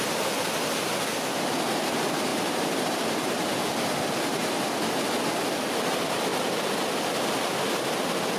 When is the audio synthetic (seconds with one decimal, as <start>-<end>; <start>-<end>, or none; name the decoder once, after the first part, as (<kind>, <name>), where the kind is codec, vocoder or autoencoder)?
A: 2.3-4.0 (vocoder, BigVGAN v2); 4.4-5.0